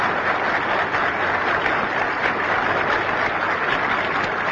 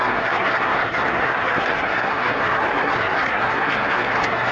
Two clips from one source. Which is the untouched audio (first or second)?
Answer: first